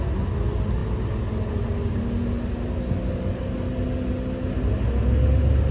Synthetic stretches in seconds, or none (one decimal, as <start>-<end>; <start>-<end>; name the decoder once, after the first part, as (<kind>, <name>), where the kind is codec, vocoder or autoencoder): none